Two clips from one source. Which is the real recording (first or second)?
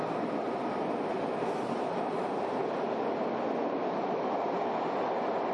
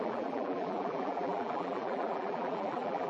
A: first